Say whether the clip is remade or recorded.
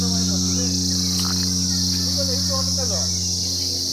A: recorded